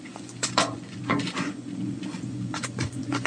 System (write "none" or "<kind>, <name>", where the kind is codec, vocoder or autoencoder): vocoder, Vocos